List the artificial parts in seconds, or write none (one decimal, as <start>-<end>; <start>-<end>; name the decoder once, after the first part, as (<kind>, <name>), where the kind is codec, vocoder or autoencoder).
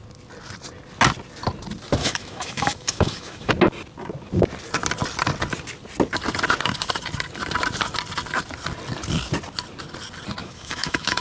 2.0-3.5 (autoencoder, DAC-VAE); 10.4-11.2